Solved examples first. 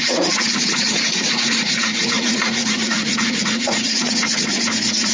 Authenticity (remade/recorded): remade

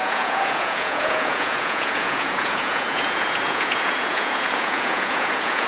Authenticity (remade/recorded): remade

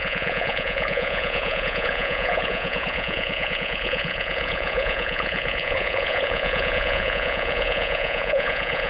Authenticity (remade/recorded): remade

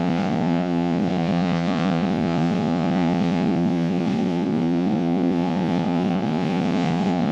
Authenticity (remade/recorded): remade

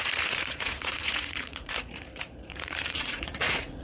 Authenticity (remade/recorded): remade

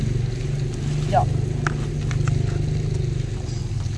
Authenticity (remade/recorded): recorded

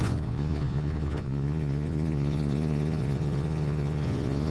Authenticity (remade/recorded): remade